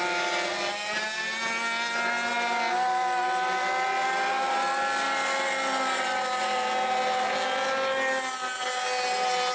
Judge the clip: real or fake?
real